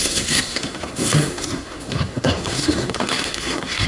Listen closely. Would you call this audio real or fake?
fake